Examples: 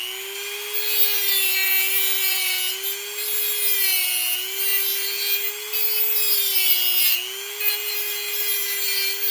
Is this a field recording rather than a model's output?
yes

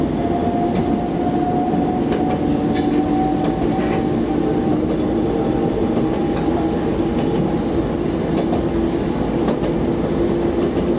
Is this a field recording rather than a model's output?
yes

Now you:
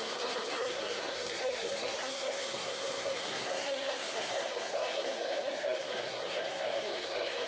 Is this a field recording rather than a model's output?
no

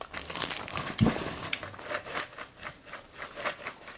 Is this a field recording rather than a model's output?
yes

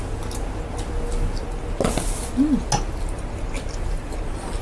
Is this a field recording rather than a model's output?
yes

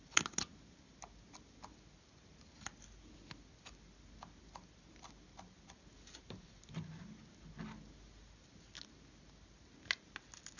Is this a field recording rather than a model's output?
yes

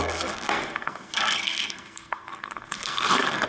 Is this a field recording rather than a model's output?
no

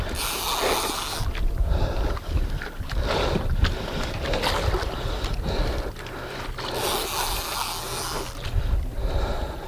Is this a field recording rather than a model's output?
yes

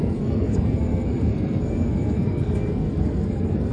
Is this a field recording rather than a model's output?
no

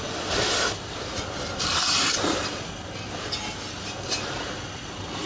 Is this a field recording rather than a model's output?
yes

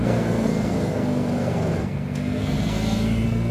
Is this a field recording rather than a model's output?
no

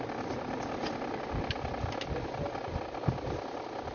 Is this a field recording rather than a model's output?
yes